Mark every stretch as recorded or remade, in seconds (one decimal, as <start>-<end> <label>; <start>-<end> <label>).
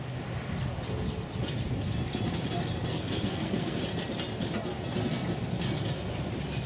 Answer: 0.0-2.9 recorded; 2.9-3.8 remade; 3.8-6.7 recorded